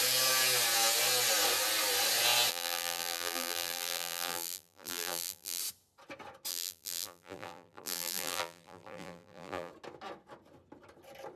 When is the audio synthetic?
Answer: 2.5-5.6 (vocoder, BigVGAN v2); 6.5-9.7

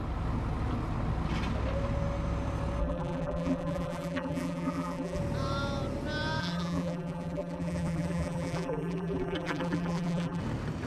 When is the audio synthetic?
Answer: 2.8-5.2 (vocoder, BigVGAN v2); 6.4-10.4

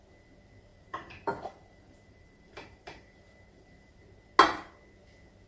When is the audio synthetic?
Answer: 0.7-4.0 (vocoder, BigVGAN v2)

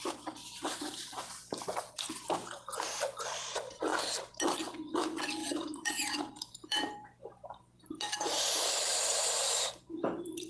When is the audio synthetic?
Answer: 0.4-1.2 (vocoder, BigVGAN v2); 5.4-10.0